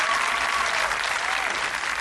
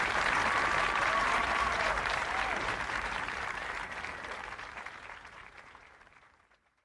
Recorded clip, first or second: first